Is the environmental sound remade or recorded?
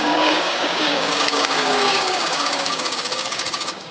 remade